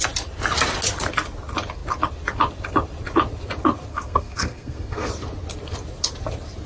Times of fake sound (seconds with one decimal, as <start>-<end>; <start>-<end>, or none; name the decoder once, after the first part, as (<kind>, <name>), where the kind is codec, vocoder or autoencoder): 3.9-5.1 (codec, SNAC)